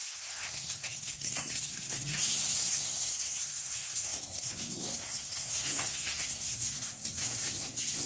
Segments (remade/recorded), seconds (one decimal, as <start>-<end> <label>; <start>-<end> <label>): 0.0-8.1 remade